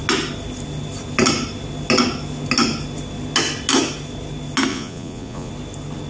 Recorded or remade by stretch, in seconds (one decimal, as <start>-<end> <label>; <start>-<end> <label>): 0.0-4.7 recorded; 4.7-5.5 remade; 5.5-6.1 recorded